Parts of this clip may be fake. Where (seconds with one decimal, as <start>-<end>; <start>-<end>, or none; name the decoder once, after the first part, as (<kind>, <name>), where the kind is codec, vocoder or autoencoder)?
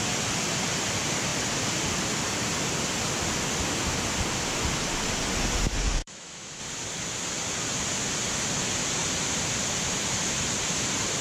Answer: 6.0-6.6 (autoencoder, DAC-VAE)